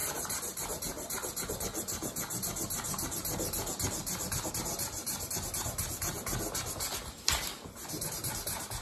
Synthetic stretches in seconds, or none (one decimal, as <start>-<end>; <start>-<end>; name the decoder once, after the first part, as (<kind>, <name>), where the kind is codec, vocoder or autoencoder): none